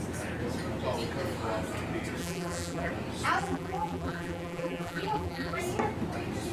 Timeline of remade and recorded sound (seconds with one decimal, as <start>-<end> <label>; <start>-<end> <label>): 0.0-2.2 recorded; 2.2-2.9 remade; 2.9-3.4 recorded; 3.4-5.6 remade; 5.6-6.5 recorded